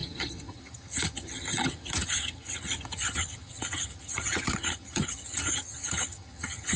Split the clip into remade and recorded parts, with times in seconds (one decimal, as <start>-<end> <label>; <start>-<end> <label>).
0.0-6.8 remade